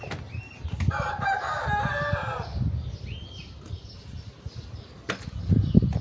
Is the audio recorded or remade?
recorded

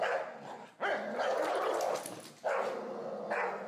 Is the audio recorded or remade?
recorded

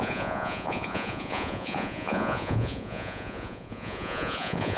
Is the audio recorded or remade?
remade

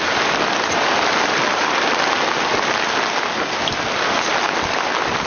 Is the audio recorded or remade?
recorded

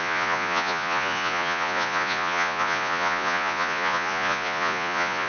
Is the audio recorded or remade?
remade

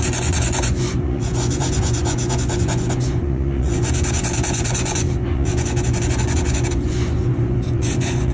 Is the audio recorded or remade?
remade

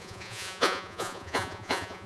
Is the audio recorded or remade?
remade